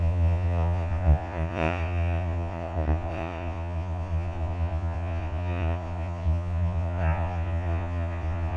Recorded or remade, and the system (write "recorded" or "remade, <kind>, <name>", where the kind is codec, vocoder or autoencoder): remade, vocoder, Vocos